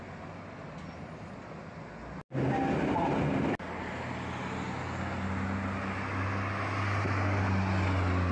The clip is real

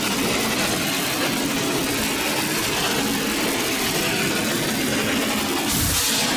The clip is real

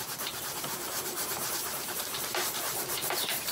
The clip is fake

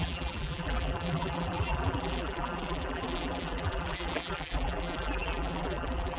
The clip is fake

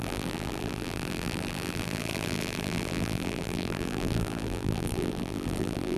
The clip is fake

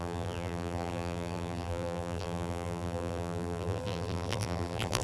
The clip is fake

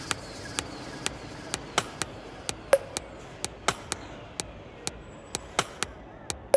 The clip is real